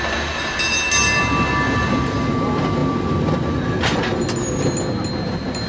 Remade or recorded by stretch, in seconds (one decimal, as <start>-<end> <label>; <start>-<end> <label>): 0.0-5.7 recorded

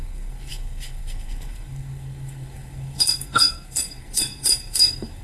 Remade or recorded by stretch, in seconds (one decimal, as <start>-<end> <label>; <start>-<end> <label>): 0.0-5.2 remade

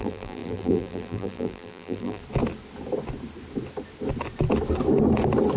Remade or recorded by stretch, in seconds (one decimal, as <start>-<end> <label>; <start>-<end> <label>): 0.0-2.2 remade; 2.2-5.6 recorded

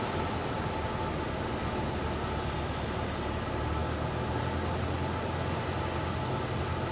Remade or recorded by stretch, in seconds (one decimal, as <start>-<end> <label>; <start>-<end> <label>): 0.0-6.9 recorded

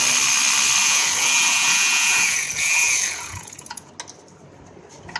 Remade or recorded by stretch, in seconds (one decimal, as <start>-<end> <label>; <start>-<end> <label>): 0.0-0.8 recorded; 0.8-3.9 remade; 3.9-5.2 recorded

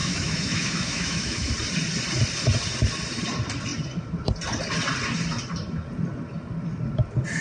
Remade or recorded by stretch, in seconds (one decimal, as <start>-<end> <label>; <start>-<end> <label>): 0.0-1.5 remade; 1.5-7.4 recorded

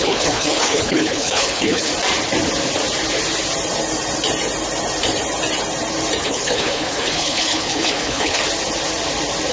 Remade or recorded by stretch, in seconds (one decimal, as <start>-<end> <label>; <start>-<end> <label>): 0.0-1.9 remade; 1.9-6.2 recorded; 6.2-8.4 remade; 8.4-9.5 recorded